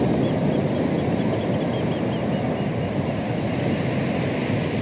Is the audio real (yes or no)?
yes